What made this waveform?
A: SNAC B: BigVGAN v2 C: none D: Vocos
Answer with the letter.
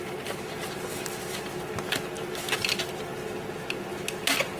C